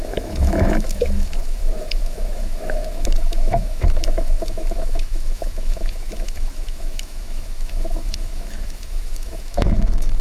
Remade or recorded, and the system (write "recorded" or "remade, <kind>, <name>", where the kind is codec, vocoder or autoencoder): remade, autoencoder, DAC-VAE